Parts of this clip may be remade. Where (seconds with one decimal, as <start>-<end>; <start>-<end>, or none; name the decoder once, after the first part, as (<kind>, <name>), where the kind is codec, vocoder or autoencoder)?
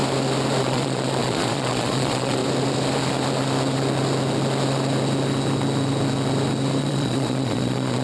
0.6-2.4 (vocoder, Vocos); 6.8-8.0